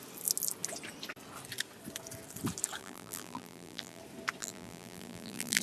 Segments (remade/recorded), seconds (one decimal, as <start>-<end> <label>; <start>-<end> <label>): 0.0-2.8 recorded; 2.8-4.0 remade; 4.0-4.4 recorded; 4.4-5.6 remade